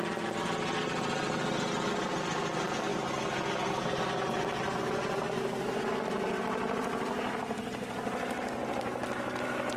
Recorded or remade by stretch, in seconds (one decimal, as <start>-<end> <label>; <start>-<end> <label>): 0.0-9.8 recorded